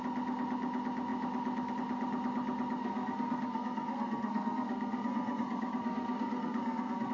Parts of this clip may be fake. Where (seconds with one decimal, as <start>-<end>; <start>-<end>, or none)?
2.8-7.1

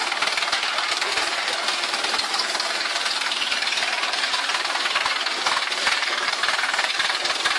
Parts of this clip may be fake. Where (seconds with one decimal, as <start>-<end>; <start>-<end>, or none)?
0.9-4.5; 5.8-7.6

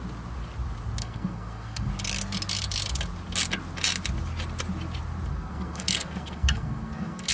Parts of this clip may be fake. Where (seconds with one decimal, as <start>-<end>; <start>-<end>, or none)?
1.0-1.9; 5.3-7.3

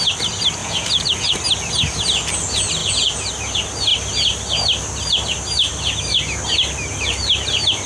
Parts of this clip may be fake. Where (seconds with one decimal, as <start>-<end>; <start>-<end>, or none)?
0.6-1.4; 2.8-3.3

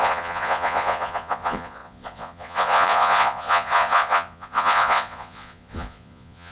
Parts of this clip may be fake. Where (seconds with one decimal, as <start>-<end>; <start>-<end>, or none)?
0.0-6.5

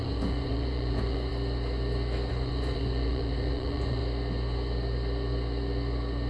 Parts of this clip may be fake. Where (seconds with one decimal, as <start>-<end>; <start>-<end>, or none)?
0.0-1.3; 2.3-4.0

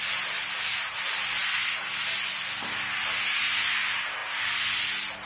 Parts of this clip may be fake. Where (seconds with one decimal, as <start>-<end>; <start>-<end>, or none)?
none

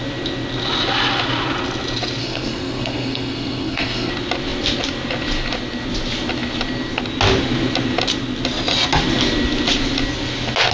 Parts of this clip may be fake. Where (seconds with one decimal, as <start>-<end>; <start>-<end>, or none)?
2.2-4.1